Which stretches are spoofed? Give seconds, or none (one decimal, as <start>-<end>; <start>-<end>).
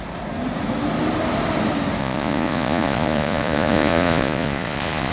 2.0-5.1